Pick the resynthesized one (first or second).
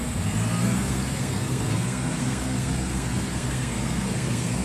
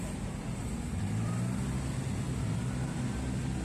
first